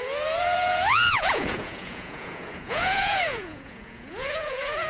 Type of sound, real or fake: fake